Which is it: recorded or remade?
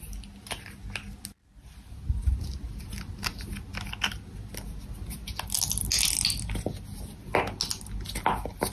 recorded